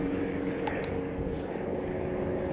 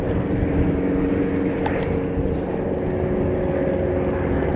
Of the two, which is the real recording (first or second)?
second